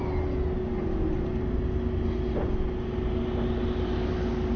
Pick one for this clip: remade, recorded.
recorded